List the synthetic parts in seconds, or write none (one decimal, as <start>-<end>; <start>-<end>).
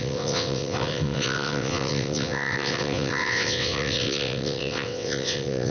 0.0-5.7